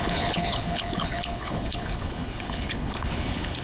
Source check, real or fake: fake